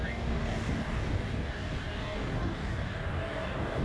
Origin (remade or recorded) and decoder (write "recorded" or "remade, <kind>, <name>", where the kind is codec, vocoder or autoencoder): remade, codec, DAC